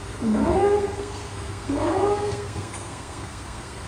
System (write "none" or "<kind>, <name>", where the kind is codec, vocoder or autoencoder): codec, SNAC